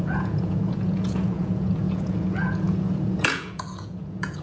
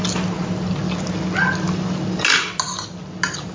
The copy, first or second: first